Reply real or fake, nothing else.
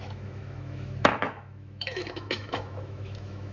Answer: fake